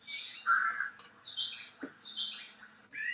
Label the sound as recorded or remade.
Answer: recorded